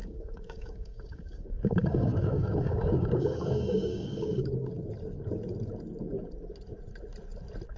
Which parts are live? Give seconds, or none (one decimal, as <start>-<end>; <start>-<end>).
4.7-7.8